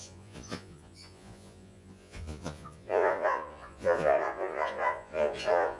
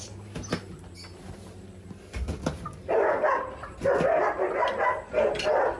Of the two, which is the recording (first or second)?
second